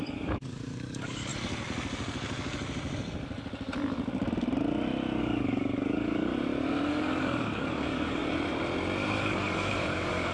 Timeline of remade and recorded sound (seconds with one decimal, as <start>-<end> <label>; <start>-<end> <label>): 0.0-1.3 remade; 1.3-5.2 recorded; 5.2-6.3 remade; 6.3-6.9 recorded; 6.9-8.2 remade; 8.2-9.2 recorded; 9.2-10.3 remade